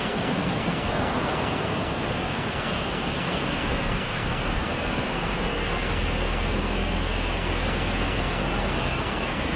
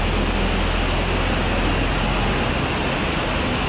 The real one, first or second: second